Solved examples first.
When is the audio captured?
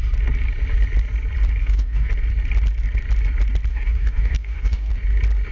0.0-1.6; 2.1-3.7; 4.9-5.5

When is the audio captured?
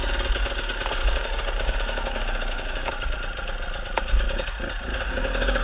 0.0-1.0; 2.9-4.9